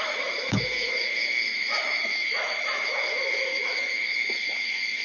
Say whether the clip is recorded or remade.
remade